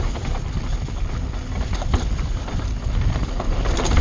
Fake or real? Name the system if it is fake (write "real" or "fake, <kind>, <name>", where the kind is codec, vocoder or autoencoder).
real